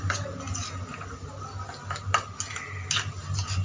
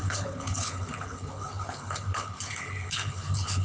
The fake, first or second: second